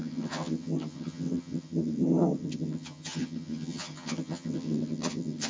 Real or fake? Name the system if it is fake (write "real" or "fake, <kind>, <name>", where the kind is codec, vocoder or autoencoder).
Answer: fake, vocoder, HiFi-GAN